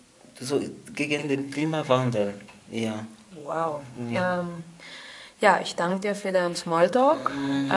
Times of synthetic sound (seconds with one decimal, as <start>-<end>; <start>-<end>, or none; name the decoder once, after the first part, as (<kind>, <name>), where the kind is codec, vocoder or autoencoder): 1.2-2.6 (codec, SNAC); 3.4-4.6; 5.9-7.8